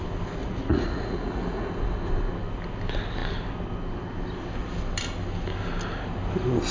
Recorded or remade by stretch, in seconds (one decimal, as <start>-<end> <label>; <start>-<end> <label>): 0.0-0.4 recorded; 0.4-1.7 remade; 1.7-6.7 recorded